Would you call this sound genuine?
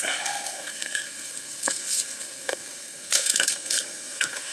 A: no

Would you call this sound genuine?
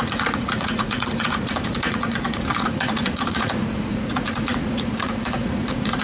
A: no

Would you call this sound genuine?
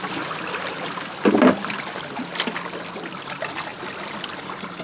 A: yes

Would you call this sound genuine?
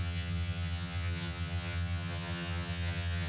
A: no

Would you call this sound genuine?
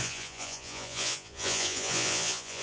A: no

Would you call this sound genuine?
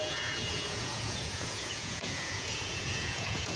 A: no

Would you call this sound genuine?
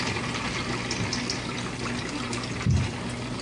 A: yes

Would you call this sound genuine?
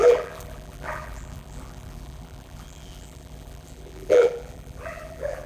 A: no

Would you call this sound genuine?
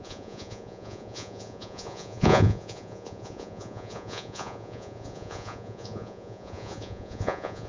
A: no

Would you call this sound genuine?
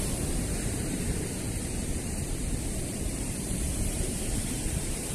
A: no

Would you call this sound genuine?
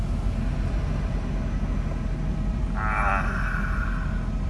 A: yes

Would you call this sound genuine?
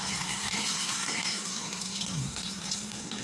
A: no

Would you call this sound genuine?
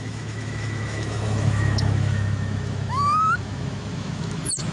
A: no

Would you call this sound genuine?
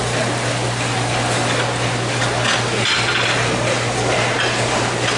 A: yes